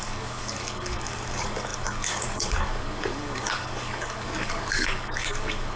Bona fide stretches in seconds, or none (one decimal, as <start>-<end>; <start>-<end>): none